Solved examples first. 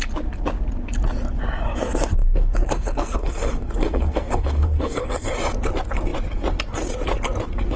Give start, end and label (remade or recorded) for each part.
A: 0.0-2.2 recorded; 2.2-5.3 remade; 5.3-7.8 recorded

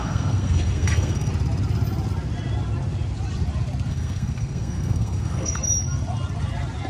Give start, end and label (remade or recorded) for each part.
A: 0.0-1.3 remade; 1.3-3.9 recorded; 3.9-5.6 remade; 5.6-6.9 recorded

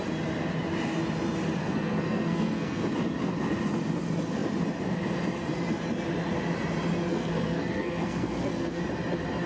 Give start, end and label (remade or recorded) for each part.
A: 0.0-1.6 recorded; 1.6-2.8 remade; 2.8-7.1 recorded; 7.1-8.8 remade; 8.8-9.5 recorded

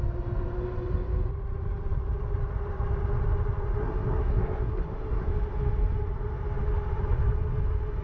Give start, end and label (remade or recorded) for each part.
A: 0.0-3.8 recorded; 3.8-5.3 remade; 5.3-8.0 recorded